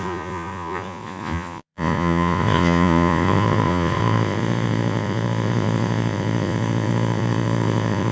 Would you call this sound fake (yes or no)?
yes